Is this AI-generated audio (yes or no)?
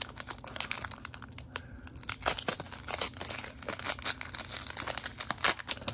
no